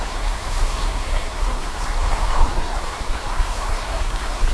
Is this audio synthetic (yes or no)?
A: yes